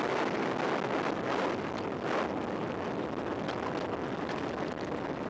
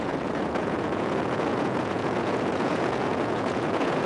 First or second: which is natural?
first